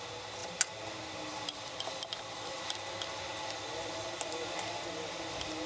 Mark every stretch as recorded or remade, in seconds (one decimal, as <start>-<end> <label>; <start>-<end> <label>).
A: 0.0-5.7 recorded